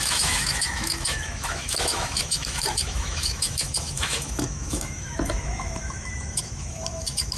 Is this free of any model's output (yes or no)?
no